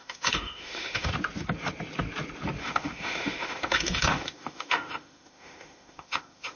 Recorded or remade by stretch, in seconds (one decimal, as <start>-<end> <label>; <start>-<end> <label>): 0.0-1.1 remade; 1.1-2.6 recorded; 2.6-6.6 remade